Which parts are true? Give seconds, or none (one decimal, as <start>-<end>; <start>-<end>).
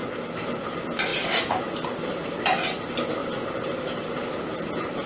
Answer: 0.0-1.1; 2.4-3.2; 4.1-5.1